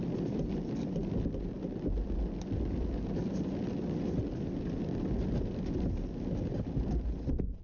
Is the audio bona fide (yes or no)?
yes